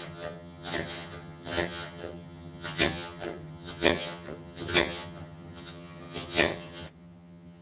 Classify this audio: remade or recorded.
remade